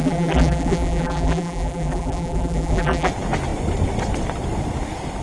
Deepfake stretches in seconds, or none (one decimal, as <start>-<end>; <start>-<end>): 0.0-3.1